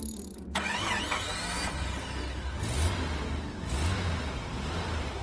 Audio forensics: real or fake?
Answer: real